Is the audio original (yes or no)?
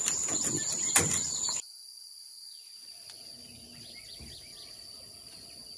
yes